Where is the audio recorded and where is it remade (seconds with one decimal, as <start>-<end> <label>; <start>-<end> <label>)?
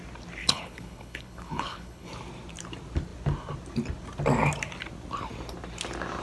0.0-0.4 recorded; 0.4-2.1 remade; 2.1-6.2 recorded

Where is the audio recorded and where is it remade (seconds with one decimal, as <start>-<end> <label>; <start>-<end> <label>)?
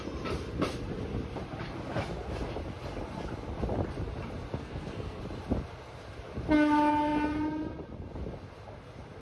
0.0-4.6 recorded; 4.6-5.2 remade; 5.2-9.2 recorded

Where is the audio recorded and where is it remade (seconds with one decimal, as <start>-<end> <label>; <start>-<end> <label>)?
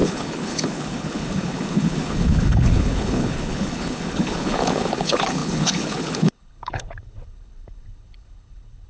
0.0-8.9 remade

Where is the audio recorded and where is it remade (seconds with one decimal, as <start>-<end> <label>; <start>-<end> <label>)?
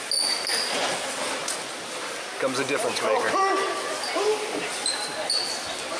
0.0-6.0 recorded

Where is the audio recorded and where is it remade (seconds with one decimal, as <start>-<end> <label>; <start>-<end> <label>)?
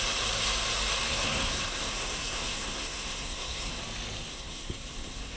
0.0-1.1 recorded; 1.1-3.8 remade; 3.8-4.3 recorded; 4.3-5.4 remade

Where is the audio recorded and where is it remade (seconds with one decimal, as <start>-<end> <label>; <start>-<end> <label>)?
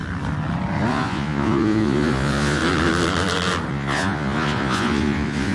0.0-0.9 recorded; 0.9-2.6 remade; 2.6-3.7 recorded; 3.7-5.5 remade